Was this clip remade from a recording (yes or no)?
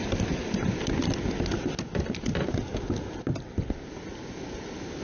no